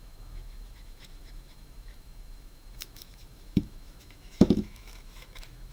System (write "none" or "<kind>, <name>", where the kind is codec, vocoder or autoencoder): autoencoder, DAC-VAE